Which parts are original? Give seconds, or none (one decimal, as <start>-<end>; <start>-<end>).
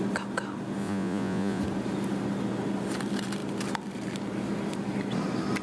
0.0-0.8; 1.6-5.6